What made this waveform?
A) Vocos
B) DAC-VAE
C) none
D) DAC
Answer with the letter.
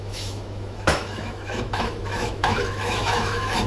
B